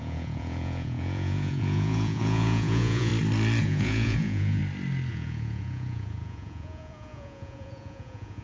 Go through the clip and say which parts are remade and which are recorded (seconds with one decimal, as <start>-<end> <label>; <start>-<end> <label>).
0.0-3.1 remade; 3.1-3.6 recorded; 3.6-4.6 remade; 4.6-5.1 recorded; 5.1-8.4 remade